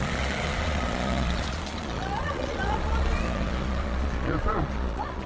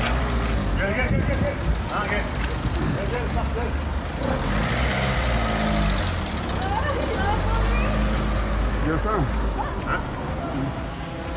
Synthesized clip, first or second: first